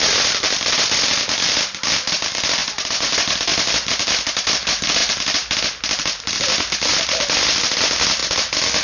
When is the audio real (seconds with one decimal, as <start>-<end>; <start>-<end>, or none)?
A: 0.0-2.6; 3.1-8.8